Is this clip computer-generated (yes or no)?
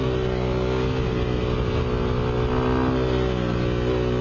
no